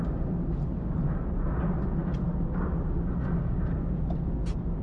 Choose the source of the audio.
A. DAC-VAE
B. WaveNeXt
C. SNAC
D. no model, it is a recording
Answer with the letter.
D